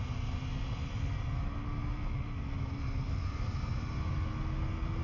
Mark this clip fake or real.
real